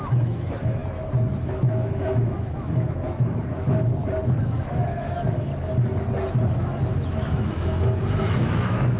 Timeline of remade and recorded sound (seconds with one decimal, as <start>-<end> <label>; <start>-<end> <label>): 0.0-0.8 remade; 0.8-1.4 recorded; 1.4-3.9 remade; 3.9-4.4 recorded; 4.4-5.5 remade; 5.5-6.5 recorded; 6.5-9.0 remade